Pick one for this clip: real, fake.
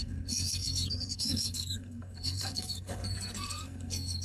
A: fake